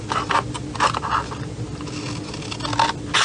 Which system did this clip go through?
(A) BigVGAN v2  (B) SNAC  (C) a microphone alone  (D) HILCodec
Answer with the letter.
C